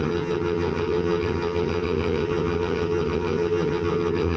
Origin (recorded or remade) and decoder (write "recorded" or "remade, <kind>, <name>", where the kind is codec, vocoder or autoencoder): remade, vocoder, HiFi-GAN